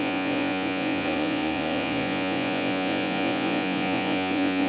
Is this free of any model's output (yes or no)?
no